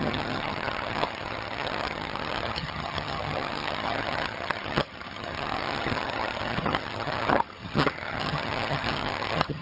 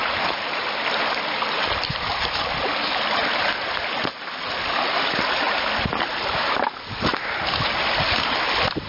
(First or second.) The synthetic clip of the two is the first